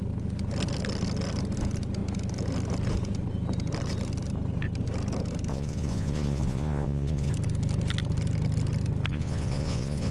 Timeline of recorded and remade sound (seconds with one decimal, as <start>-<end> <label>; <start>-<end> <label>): 0.0-5.5 recorded; 5.5-7.3 remade; 7.3-9.1 recorded; 9.1-10.1 remade

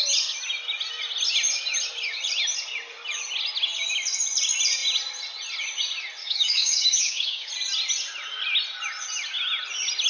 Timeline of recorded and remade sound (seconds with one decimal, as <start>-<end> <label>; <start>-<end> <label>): 0.0-6.2 recorded; 6.2-7.5 remade; 7.5-10.1 recorded

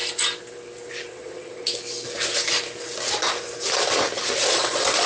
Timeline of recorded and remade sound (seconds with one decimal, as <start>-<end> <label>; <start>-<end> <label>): 0.0-1.1 recorded; 1.1-1.6 remade; 1.6-4.5 recorded; 4.5-5.1 remade

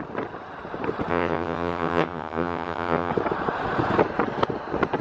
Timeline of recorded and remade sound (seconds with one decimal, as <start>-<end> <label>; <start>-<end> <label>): 0.0-1.1 recorded; 1.1-3.1 remade; 3.1-5.0 recorded

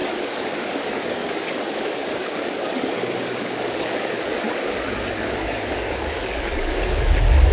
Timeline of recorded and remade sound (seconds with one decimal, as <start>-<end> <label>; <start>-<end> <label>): 0.0-7.5 remade